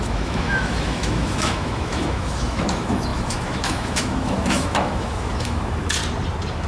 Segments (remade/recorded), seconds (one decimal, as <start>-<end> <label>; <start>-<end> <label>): 0.0-6.0 remade; 6.0-6.7 recorded